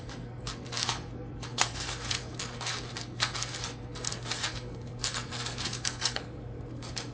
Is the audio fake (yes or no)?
yes